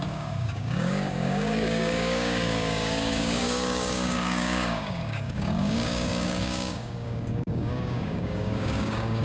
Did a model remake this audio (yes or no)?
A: yes